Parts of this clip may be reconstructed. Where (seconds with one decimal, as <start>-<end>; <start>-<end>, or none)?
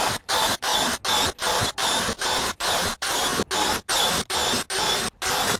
0.0-0.7; 1.6-3.3; 3.9-4.4